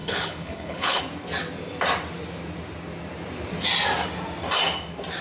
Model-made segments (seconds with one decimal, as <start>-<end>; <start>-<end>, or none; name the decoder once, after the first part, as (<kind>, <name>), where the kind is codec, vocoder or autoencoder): 0.0-1.0 (codec, HILCodec)